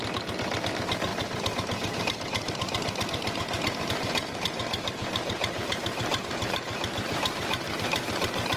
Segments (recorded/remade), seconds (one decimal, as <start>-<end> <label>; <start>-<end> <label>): 0.0-1.1 remade; 1.1-3.9 recorded; 3.9-8.6 remade